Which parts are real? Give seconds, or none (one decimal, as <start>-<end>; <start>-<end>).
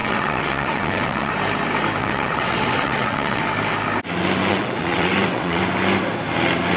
1.3-2.0; 3.4-4.5; 5.6-6.8